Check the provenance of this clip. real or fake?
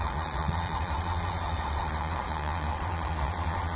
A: fake